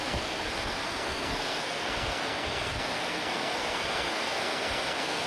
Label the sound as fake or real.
fake